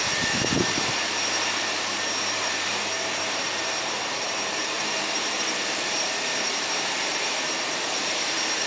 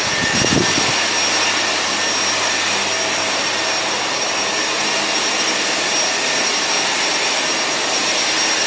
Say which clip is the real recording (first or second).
second